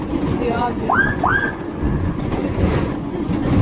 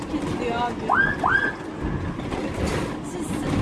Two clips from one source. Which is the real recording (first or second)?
second